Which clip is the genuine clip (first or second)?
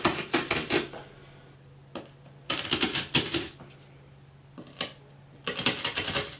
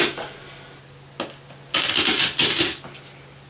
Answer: second